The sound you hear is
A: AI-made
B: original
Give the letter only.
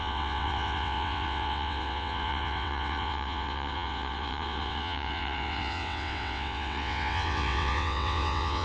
A